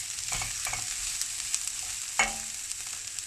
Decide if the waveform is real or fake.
real